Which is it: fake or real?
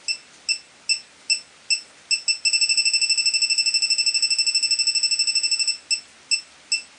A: real